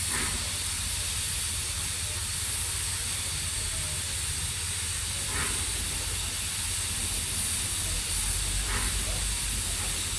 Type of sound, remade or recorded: recorded